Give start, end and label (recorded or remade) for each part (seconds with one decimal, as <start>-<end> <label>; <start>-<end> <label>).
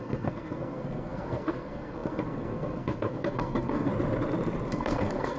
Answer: 0.0-3.9 remade; 3.9-4.7 recorded; 4.7-5.4 remade